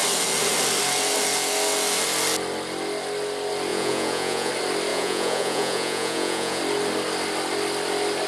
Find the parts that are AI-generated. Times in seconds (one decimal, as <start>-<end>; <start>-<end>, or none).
3.7-4.5; 4.9-6.6